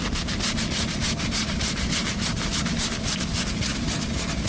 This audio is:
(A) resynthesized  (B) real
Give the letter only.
B